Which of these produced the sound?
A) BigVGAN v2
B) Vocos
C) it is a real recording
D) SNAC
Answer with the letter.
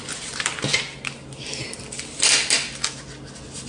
C